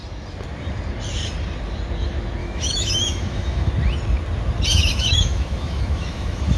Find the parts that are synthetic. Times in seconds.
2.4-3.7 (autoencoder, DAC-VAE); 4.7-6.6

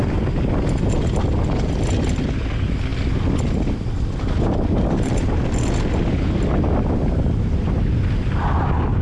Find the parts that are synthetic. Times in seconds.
none

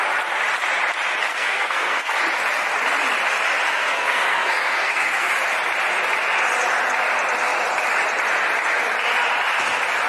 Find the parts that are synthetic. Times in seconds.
1.3-2.2 (codec, SNAC); 3.7-5.3

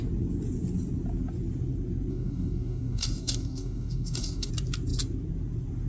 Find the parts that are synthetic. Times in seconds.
2.1-4.5 (codec, DAC)

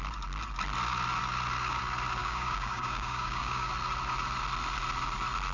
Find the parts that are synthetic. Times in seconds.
2.2-3.7 (codec, DAC)

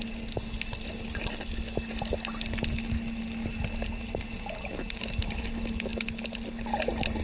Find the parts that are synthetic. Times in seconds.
none

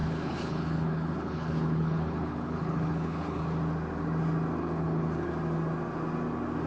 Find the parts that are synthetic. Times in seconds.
0.0-3.4 (codec, HILCodec); 4.6-5.3

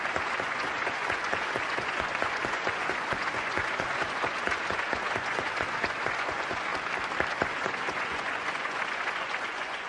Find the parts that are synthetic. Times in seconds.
0.0-6.7 (vocoder, Vocos); 7.3-9.9